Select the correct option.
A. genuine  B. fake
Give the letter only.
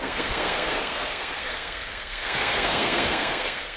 B